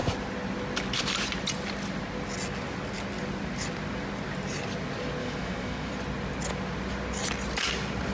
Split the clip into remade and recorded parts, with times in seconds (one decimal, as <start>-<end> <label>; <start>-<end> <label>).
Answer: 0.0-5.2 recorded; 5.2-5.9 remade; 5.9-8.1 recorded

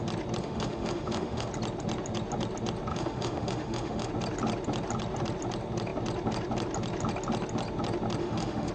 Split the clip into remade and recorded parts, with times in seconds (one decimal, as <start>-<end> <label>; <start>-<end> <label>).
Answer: 0.0-0.4 recorded; 0.4-1.5 remade; 1.5-2.9 recorded; 2.9-4.1 remade; 4.1-8.2 recorded; 8.2-8.7 remade

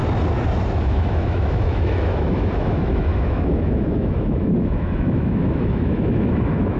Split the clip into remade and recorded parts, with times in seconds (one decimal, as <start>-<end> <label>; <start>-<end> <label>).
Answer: 0.0-0.8 recorded; 0.8-6.8 remade

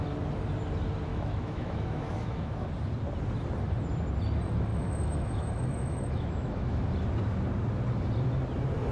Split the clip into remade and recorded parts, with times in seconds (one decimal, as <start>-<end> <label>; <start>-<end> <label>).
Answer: 0.0-1.1 recorded; 1.1-2.7 remade; 2.7-4.7 recorded; 4.7-6.8 remade; 6.8-8.9 recorded

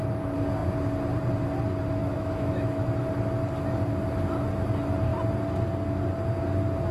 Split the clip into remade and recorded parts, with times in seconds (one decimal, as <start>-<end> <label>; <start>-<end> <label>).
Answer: 0.0-2.0 recorded; 2.0-3.1 remade; 3.1-6.9 recorded

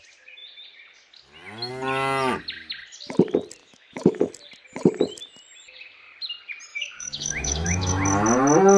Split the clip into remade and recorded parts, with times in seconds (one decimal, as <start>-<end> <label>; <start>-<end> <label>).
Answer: 0.0-3.6 recorded; 3.6-4.3 remade; 4.3-6.7 recorded; 6.7-7.9 remade; 7.9-8.8 recorded